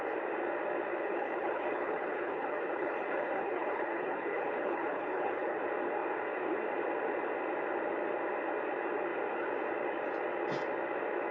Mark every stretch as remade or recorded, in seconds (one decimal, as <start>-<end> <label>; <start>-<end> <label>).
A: 0.0-1.0 recorded; 1.0-5.6 remade; 5.6-11.3 recorded